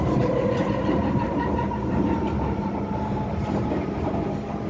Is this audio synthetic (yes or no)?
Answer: yes